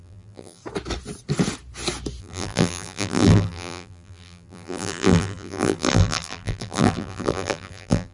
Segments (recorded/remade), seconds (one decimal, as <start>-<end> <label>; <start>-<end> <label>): 0.0-0.6 remade; 0.6-2.2 recorded; 2.2-8.1 remade